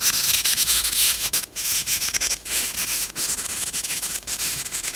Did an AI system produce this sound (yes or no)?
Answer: yes